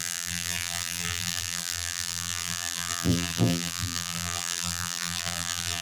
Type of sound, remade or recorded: remade